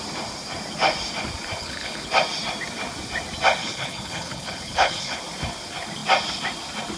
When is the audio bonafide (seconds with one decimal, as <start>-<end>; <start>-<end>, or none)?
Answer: 0.0-1.6; 2.1-3.6; 5.2-7.0